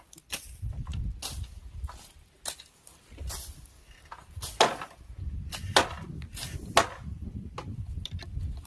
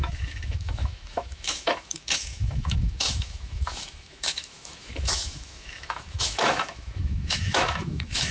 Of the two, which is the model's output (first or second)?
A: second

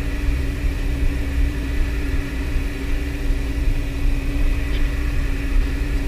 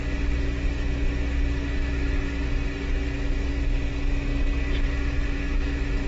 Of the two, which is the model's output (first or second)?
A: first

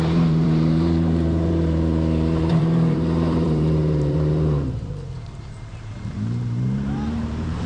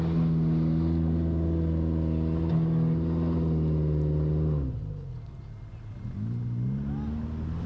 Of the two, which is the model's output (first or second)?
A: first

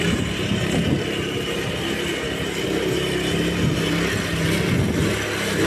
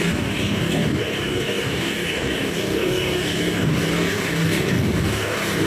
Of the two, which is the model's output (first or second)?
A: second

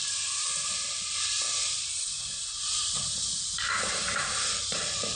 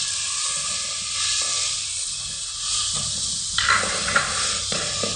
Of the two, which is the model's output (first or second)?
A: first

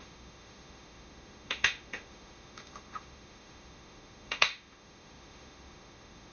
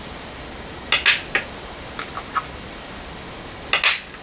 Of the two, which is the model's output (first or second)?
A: first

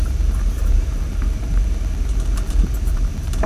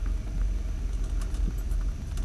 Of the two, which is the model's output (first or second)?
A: first